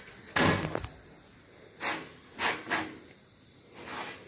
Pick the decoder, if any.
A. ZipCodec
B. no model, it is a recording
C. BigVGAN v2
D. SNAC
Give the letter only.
B